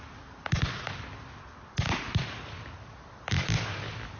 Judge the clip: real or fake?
real